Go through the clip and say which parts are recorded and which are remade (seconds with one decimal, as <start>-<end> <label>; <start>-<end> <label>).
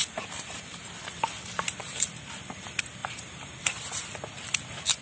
0.0-1.0 remade; 1.0-3.0 recorded; 3.0-4.1 remade; 4.1-5.0 recorded